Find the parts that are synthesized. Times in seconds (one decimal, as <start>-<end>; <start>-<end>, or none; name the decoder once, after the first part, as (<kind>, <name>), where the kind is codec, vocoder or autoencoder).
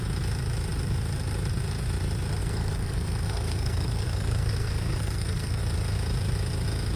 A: 2.4-5.6 (codec, SNAC)